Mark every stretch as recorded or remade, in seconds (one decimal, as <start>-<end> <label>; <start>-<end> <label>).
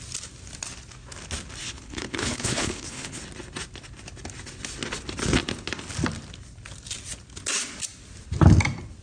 0.0-1.6 recorded; 1.6-3.2 remade; 3.2-9.0 recorded